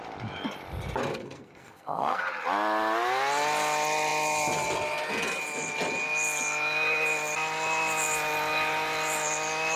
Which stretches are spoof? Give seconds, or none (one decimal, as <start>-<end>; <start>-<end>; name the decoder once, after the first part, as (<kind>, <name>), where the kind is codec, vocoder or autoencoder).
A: 1.1-2.2 (codec, SNAC)